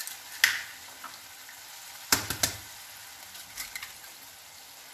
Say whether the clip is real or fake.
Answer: real